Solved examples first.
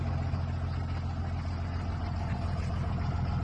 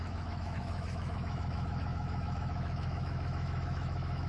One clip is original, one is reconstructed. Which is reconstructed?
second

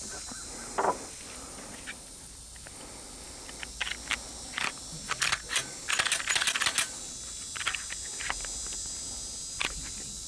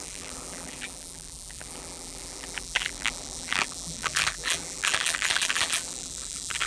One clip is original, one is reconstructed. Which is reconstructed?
second